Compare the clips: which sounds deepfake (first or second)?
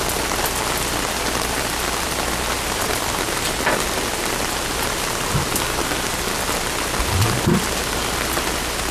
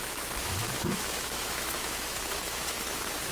second